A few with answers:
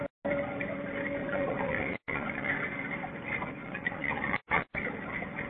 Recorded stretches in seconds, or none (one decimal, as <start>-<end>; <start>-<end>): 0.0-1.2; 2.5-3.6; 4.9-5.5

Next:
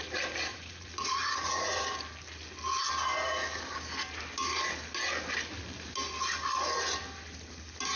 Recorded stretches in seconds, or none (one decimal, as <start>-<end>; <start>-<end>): 0.0-0.5; 1.8-8.0

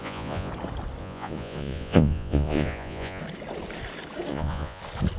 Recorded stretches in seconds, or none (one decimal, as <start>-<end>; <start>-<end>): 0.5-1.0; 3.2-4.3; 4.8-5.2